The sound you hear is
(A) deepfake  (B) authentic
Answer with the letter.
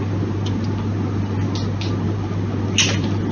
B